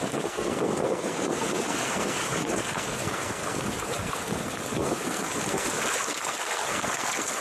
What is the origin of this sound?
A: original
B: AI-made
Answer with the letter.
B